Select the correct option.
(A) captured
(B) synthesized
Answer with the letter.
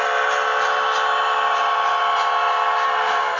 A